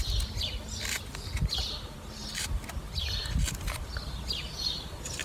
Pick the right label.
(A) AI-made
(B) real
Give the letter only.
B